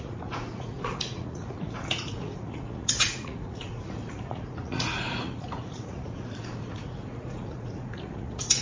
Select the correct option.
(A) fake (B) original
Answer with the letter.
A